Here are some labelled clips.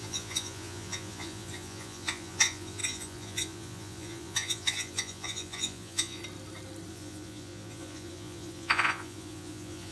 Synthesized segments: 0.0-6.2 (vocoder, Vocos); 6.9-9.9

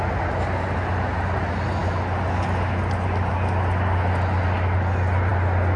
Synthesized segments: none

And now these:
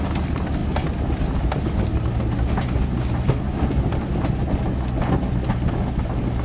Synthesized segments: none